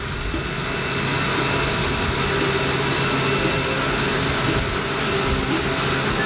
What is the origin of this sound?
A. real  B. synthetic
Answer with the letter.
A